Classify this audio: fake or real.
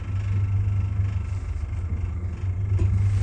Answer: real